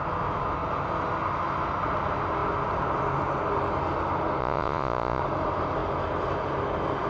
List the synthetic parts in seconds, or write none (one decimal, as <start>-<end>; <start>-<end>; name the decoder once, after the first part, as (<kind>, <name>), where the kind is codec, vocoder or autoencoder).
4.4-5.2 (vocoder, Vocos)